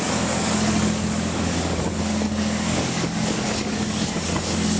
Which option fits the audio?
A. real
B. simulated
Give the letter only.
B